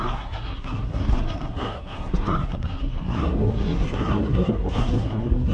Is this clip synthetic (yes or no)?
yes